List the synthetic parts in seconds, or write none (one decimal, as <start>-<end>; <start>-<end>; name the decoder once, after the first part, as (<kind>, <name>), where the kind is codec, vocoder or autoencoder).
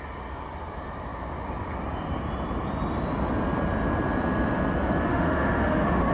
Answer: 5.1-6.1 (autoencoder, DAC-VAE)